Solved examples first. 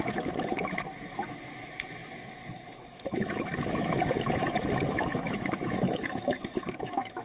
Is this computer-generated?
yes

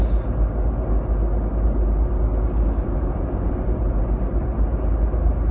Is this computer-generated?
no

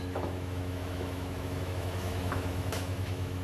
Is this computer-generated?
yes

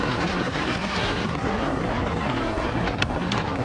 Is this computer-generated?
yes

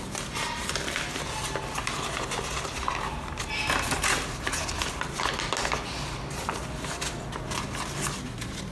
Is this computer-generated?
no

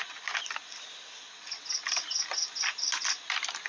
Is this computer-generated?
no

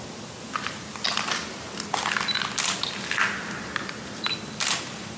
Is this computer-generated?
no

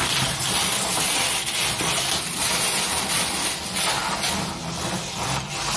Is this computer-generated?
no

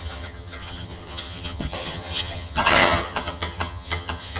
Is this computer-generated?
yes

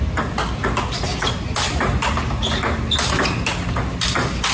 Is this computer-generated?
no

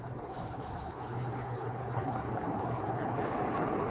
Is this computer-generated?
yes